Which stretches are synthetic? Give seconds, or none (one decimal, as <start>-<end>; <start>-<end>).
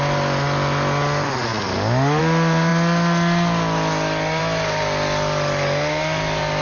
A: none